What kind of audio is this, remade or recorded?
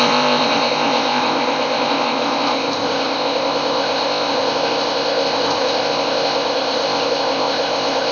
remade